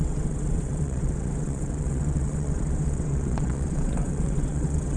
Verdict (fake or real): fake